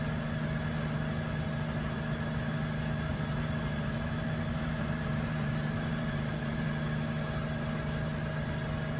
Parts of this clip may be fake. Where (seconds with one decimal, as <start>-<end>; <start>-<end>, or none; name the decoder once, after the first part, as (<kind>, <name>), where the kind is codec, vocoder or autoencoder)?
3.1-6.7 (vocoder, BigVGAN v2)